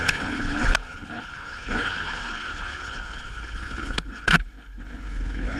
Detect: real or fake fake